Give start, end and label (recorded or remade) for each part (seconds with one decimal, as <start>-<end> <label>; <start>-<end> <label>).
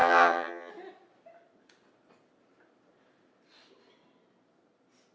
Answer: 0.0-0.7 remade; 0.7-5.1 recorded